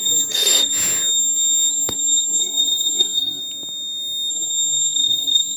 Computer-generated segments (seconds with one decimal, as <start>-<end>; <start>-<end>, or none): 0.0-0.7; 1.7-3.4; 4.3-5.6